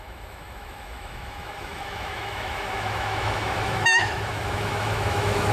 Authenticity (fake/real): fake